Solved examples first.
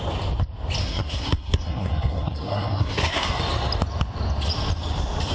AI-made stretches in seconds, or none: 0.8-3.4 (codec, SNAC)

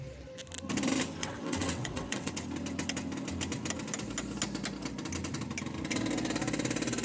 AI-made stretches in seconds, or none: 1.2-2.3 (vocoder, WaveNeXt)

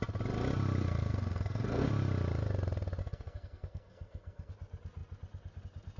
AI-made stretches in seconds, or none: 0.8-1.9 (codec, SNAC); 3.0-4.5

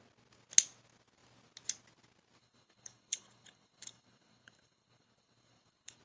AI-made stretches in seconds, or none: 2.4-6.0 (codec, HILCodec)